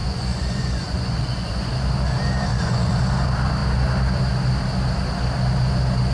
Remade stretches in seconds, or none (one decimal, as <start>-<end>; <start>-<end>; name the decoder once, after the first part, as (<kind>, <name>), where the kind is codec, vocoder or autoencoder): 0.0-1.7 (vocoder, Vocos); 2.5-3.0